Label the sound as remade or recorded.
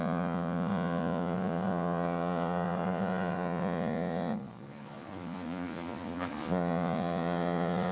remade